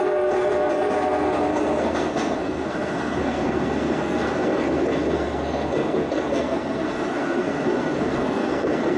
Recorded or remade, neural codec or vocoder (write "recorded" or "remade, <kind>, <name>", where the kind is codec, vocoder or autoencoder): remade, codec, SNAC